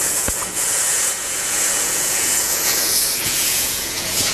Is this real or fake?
fake